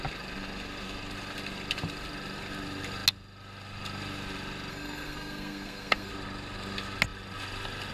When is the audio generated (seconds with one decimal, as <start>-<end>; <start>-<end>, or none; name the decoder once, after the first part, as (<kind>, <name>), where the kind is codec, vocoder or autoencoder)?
4.7-6.1 (codec, SNAC)